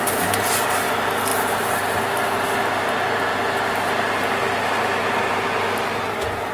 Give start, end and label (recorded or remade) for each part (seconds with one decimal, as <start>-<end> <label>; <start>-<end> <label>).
0.0-6.5 recorded